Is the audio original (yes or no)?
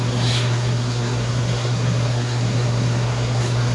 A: no